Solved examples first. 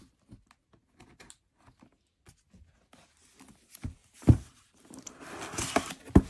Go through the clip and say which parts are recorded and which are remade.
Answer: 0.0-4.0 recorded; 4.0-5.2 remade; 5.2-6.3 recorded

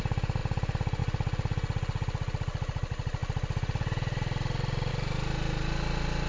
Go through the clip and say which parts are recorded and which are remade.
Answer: 0.0-6.3 recorded

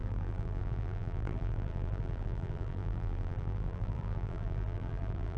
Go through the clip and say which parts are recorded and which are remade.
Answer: 0.0-5.4 remade

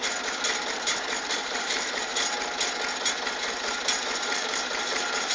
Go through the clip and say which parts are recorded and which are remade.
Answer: 0.0-0.7 recorded; 0.7-2.1 remade; 2.1-3.5 recorded; 3.5-5.3 remade

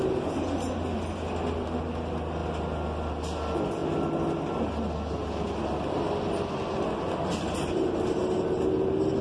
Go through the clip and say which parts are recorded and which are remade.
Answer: 0.0-9.2 recorded

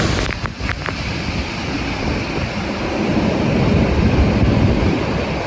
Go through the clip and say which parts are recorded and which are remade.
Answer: 0.0-0.7 remade; 0.7-4.0 recorded; 4.0-5.5 remade

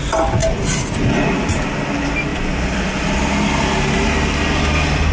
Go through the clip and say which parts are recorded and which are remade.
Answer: 0.0-2.3 recorded; 2.3-5.1 remade

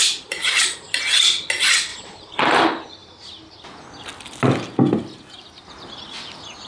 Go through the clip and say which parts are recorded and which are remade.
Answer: 0.0-1.0 remade; 1.0-1.9 recorded; 1.9-2.4 remade; 2.4-6.7 recorded